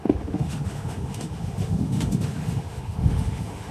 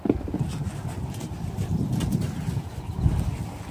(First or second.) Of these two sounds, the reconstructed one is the first